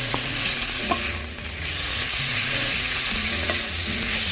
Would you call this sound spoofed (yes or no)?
yes